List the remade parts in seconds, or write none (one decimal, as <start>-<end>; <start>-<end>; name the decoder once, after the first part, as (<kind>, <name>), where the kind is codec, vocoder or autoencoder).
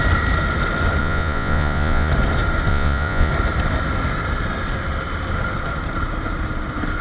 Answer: 1.0-2.1 (vocoder, Vocos); 2.7-3.3